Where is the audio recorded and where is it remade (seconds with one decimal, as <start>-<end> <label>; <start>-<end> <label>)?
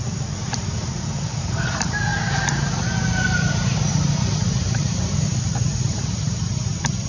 0.0-2.1 remade; 2.1-3.5 recorded; 3.5-6.5 remade; 6.5-7.1 recorded